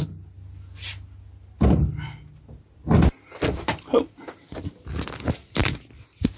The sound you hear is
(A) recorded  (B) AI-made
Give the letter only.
A